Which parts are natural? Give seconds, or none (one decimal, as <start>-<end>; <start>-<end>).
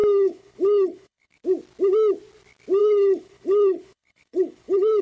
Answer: 1.4-2.8